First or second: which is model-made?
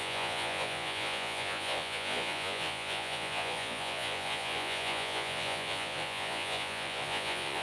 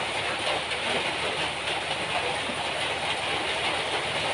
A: first